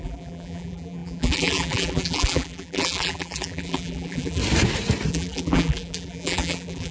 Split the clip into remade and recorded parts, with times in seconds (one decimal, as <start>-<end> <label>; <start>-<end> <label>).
0.0-4.4 remade; 4.4-5.1 recorded; 5.1-6.9 remade